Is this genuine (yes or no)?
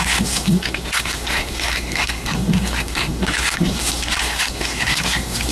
no